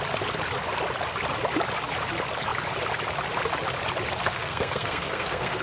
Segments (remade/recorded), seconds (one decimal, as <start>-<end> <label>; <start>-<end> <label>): 0.0-4.2 recorded; 4.2-5.6 remade